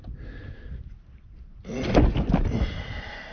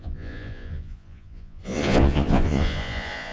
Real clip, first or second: first